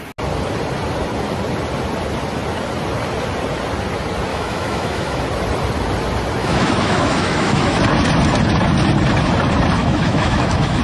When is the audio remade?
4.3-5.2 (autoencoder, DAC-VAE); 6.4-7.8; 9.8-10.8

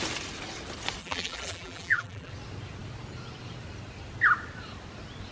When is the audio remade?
1.0-2.3 (vocoder, BigVGAN v2)

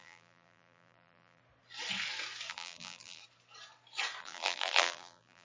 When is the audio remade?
0.0-1.4 (vocoder, BigVGAN v2); 2.5-3.2; 4.2-5.4

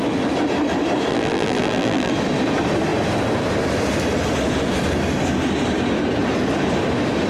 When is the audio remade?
1.1-2.1 (vocoder, BigVGAN v2)

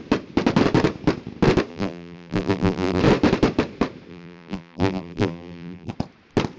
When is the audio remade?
1.7-3.0 (vocoder, BigVGAN v2); 4.1-5.9